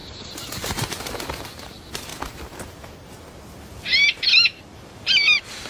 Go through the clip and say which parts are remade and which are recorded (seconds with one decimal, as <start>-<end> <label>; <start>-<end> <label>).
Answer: 0.0-2.1 remade; 2.1-4.6 recorded; 4.6-5.7 remade

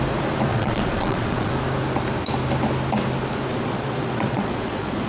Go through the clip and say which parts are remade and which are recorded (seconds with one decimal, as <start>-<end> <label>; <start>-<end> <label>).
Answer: 0.0-0.5 recorded; 0.5-1.5 remade; 1.5-3.5 recorded; 3.5-5.1 remade

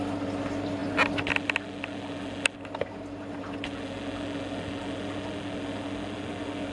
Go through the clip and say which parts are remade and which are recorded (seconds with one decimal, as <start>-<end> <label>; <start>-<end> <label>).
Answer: 0.0-6.7 recorded